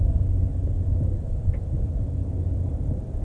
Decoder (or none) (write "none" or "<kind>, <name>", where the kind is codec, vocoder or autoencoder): none